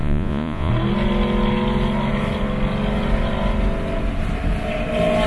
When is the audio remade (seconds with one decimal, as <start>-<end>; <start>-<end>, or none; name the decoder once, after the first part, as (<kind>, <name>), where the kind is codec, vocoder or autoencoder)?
0.0-0.7 (vocoder, Vocos)